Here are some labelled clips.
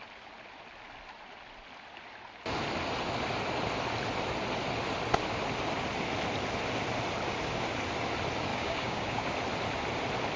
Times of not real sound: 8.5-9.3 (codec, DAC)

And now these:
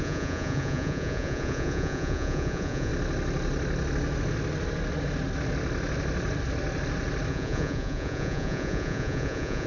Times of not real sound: 0.0-2.9 (vocoder, Vocos); 7.3-9.7

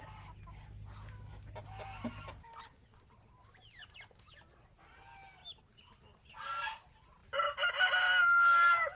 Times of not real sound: none

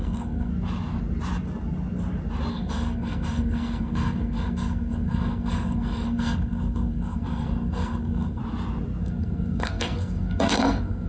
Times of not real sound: 0.0-0.5 (codec, SNAC); 2.5-8.4; 9.0-11.1

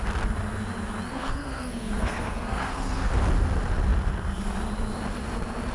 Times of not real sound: 1.1-3.1 (codec, SNAC)